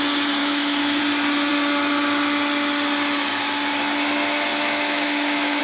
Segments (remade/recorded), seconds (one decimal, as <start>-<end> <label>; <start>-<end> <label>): 0.0-0.4 recorded; 0.4-1.0 remade; 1.0-4.5 recorded; 4.5-5.6 remade